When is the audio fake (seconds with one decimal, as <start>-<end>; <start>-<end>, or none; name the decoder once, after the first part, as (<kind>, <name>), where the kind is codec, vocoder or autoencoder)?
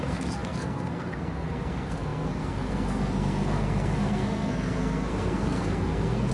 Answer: 0.0-6.3 (codec, SNAC)